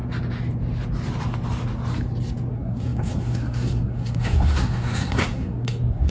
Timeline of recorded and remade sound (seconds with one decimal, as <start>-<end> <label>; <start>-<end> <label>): 0.0-2.5 recorded; 2.5-6.1 remade